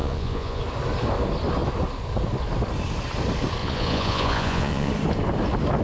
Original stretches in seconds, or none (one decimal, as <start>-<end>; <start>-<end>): 0.6-3.6; 4.9-5.8